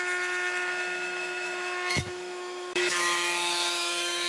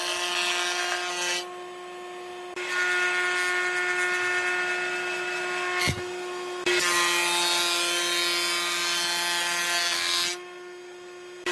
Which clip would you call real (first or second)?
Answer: second